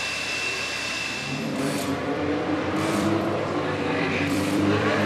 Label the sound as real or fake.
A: fake